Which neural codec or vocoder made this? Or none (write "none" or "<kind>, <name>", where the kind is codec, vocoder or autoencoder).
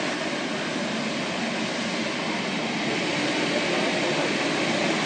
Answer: vocoder, BigVGAN v2